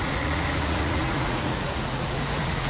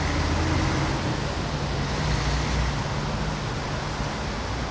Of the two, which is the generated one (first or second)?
first